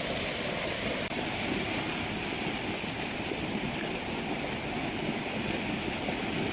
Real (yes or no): yes